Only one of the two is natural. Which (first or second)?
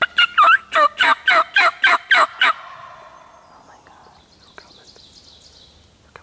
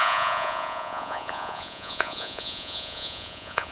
first